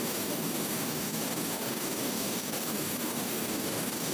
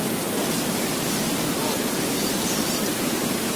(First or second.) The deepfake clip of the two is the first